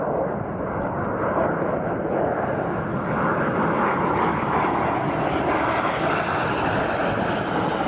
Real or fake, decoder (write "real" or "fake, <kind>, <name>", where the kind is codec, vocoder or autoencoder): real